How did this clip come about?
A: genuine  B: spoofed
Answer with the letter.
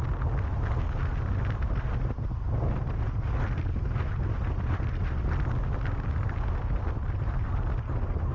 A